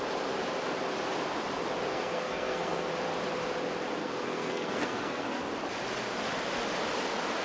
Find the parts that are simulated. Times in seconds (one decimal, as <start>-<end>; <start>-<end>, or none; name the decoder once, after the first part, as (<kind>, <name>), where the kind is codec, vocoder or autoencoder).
1.9-2.9 (codec, SNAC); 4.0-5.4